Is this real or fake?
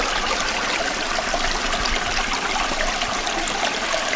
real